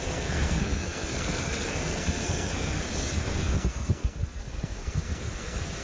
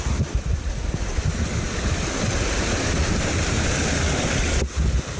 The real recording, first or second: second